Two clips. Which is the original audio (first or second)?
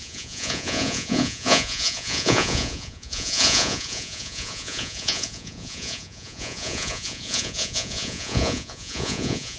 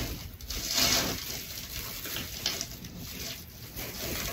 second